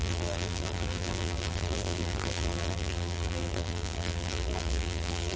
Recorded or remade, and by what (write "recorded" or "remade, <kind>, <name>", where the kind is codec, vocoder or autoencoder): remade, vocoder, BigVGAN v2